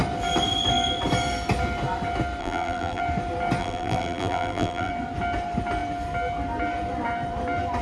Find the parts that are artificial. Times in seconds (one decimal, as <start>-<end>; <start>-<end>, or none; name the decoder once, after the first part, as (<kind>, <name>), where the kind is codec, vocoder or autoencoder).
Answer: 2.4-3.0 (vocoder, BigVGAN v2); 3.6-4.9

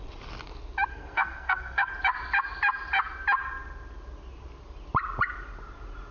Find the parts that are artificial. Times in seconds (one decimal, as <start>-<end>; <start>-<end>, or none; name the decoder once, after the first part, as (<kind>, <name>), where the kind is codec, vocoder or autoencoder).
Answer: 0.9-1.9 (codec, SNAC)

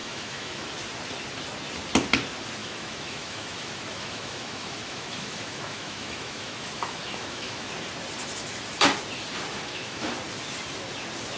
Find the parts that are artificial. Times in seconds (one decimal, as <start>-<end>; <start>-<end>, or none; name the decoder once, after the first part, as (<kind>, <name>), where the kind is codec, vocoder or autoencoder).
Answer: 0.0-0.7 (autoencoder, DAC-VAE); 2.6-7.7; 9.5-10.1

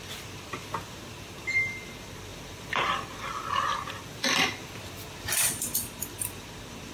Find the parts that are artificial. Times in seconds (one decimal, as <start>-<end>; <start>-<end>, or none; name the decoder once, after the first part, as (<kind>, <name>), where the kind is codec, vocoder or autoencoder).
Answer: 0.0-4.6 (vocoder, BigVGAN v2); 5.3-6.9

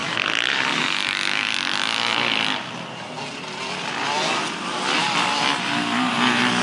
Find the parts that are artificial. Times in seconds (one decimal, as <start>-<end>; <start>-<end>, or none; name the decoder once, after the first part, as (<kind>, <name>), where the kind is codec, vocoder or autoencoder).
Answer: none